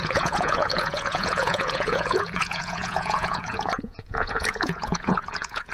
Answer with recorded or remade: remade